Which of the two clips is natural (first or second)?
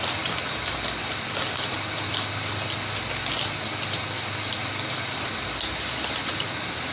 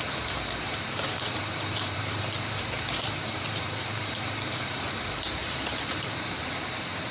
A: first